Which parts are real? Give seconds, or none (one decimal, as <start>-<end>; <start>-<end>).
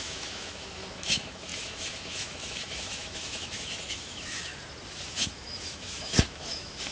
4.5-5.1